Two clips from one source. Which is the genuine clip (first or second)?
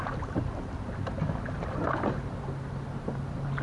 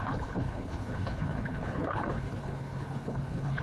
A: first